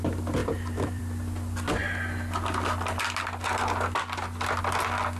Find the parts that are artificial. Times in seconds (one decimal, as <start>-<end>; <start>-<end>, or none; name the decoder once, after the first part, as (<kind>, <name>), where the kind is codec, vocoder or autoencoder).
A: 0.4-1.0 (vocoder, BigVGAN v2)